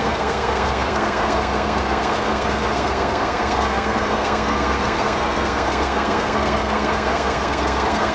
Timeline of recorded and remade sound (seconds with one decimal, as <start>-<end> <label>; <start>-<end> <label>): 0.0-8.1 remade